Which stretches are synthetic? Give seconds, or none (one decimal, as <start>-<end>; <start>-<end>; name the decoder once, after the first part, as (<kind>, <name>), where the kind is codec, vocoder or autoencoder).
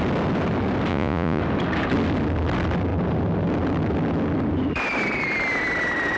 0.9-1.4 (vocoder, Vocos)